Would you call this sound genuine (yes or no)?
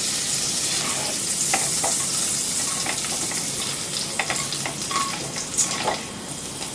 yes